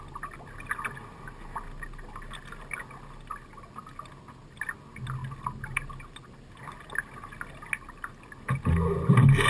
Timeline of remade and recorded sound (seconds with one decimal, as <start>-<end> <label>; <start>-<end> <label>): 0.0-9.5 recorded